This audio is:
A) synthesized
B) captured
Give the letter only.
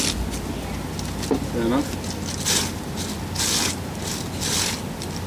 B